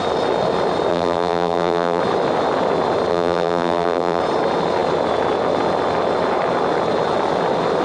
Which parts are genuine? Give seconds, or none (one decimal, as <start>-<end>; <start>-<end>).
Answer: 0.0-0.9; 2.0-3.1; 4.2-7.8